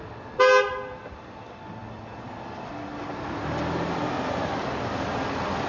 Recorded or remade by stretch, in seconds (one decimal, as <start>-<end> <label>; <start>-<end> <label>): 0.0-5.7 recorded

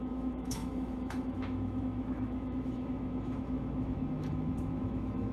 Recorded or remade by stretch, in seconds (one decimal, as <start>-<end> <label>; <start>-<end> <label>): 0.0-5.3 remade

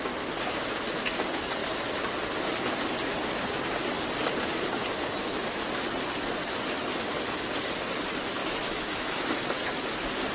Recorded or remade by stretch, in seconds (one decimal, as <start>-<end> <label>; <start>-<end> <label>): 0.0-8.4 recorded; 8.4-9.3 remade; 9.3-10.3 recorded